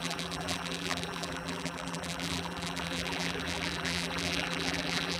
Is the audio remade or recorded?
remade